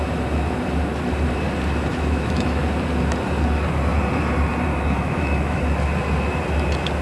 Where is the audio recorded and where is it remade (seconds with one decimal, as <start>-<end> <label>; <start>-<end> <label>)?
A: 0.0-1.9 recorded; 1.9-2.6 remade; 2.6-4.7 recorded; 4.7-5.6 remade; 5.6-7.0 recorded